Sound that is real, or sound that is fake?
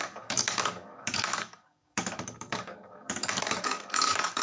fake